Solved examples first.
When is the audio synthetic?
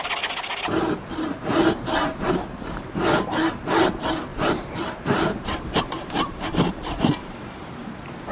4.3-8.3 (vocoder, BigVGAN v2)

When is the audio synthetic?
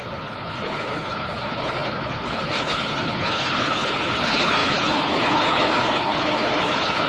0.0-7.1 (codec, HILCodec)